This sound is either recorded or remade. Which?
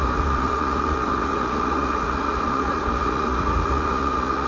remade